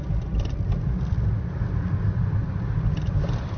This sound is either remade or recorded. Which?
recorded